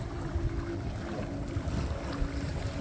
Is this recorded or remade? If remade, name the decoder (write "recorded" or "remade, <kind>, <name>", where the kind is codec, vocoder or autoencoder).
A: recorded